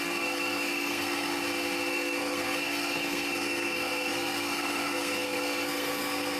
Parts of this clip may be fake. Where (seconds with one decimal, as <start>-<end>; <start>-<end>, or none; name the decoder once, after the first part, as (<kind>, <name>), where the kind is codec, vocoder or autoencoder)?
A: 0.0-1.3 (codec, SNAC); 1.9-6.4